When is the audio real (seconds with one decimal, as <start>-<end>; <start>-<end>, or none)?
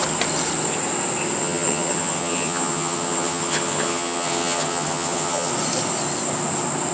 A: 0.0-1.4; 5.5-6.9